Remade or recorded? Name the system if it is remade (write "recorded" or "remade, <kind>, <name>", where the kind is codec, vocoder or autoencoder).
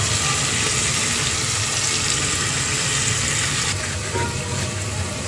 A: recorded